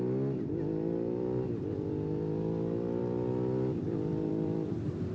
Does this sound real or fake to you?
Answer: fake